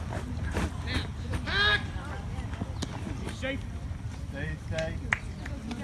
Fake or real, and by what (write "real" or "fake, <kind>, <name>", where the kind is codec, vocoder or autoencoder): real